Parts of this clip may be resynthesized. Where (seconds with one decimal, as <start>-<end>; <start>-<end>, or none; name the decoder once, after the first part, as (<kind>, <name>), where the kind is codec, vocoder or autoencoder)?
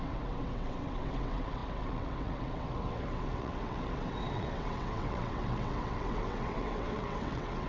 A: 0.0-7.7 (vocoder, WaveNeXt)